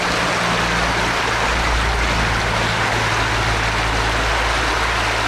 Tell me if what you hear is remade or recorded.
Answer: recorded